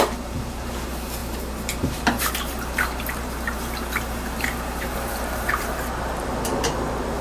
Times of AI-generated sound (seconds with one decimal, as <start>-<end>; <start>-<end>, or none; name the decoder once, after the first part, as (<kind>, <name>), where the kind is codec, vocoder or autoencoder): 0.0-6.5 (vocoder, BigVGAN v2)